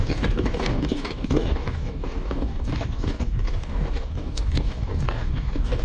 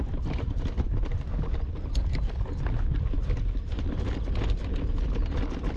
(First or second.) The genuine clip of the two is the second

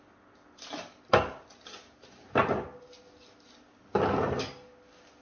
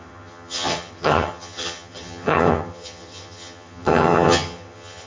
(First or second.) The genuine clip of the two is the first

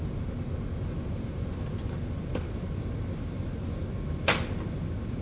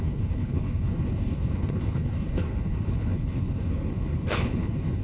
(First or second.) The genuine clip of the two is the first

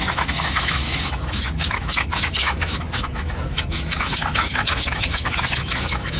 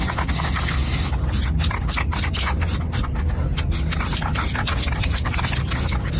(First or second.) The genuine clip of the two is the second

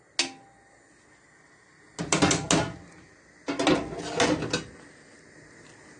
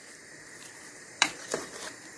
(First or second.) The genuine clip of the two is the first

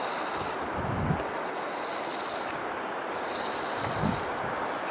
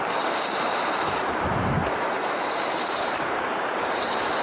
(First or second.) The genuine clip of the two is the first